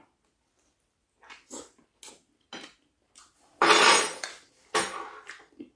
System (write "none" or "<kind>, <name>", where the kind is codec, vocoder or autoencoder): none